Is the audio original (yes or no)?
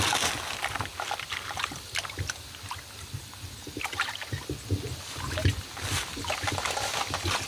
yes